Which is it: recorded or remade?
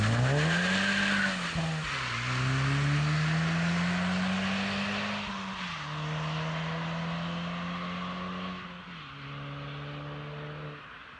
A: recorded